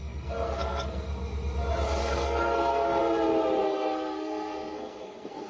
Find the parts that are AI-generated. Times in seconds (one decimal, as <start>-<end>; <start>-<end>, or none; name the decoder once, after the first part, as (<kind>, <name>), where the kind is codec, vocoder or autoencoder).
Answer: 0.0-1.1 (codec, SNAC); 2.0-3.0; 3.6-5.5